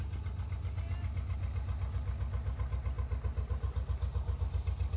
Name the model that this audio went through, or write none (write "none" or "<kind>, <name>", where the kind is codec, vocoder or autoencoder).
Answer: none